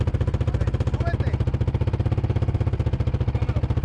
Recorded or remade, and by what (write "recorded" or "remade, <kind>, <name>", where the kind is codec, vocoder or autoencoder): recorded